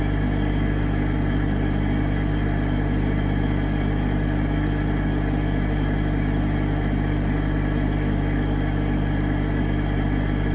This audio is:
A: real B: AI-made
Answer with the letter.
A